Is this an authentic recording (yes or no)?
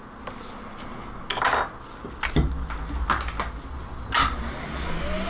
yes